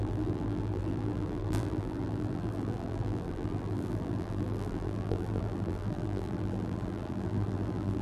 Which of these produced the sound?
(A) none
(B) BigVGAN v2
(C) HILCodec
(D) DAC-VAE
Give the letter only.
B